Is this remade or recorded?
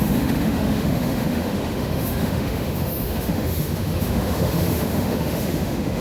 remade